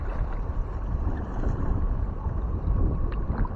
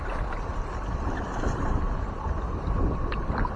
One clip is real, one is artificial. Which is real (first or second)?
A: second